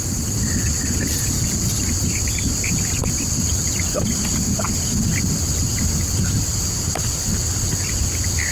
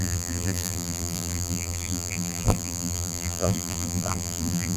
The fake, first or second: second